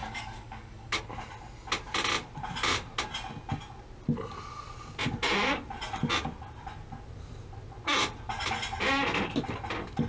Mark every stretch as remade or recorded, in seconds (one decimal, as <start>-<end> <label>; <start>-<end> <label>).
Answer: 0.0-1.0 remade; 1.0-10.1 recorded